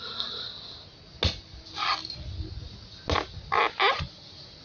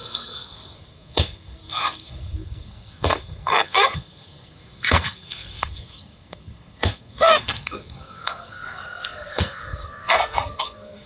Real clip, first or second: first